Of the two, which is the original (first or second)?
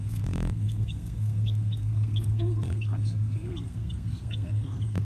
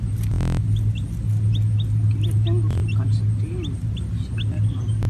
second